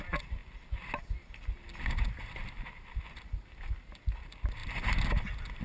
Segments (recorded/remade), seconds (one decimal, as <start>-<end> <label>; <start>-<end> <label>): 0.0-5.6 recorded